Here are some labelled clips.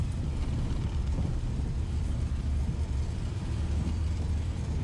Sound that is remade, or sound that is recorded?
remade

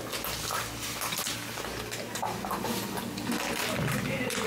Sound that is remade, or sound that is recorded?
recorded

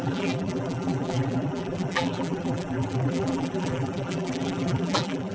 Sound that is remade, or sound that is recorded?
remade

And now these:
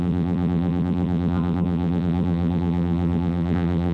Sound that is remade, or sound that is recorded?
remade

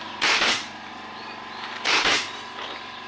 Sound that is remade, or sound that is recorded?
remade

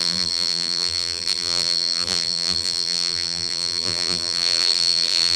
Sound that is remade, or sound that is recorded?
remade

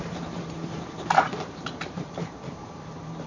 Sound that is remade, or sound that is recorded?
remade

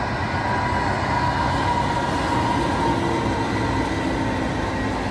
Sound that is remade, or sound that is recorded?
recorded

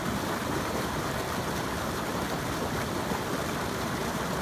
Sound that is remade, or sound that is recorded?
remade